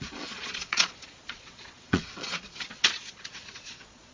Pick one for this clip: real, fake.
fake